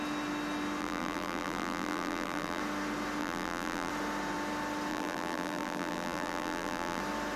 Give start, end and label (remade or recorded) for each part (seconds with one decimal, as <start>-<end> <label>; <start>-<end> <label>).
0.0-0.8 recorded; 0.8-2.6 remade; 2.6-3.2 recorded; 3.2-3.9 remade; 3.9-4.9 recorded; 4.9-7.0 remade; 7.0-7.4 recorded